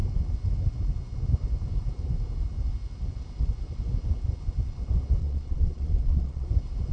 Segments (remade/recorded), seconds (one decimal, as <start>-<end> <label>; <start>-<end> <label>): 0.0-5.2 recorded; 5.2-6.5 remade; 6.5-6.9 recorded